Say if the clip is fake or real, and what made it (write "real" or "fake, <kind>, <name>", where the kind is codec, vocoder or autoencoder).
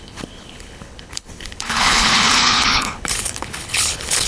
fake, codec, HILCodec